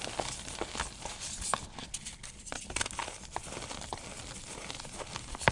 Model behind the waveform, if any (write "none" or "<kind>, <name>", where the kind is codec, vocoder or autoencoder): none